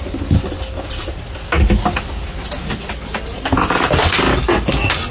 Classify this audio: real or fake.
real